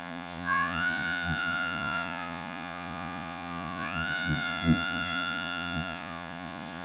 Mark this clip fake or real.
fake